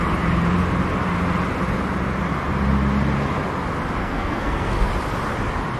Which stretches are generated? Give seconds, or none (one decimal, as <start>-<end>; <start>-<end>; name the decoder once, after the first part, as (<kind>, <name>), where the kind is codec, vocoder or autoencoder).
4.0-4.9 (codec, SNAC)